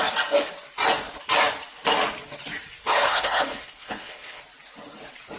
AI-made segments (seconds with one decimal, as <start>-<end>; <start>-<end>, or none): 2.8-4.4